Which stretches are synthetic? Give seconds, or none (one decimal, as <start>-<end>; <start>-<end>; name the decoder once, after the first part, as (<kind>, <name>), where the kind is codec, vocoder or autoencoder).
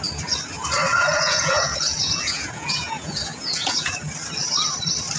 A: 0.9-4.0 (vocoder, Vocos)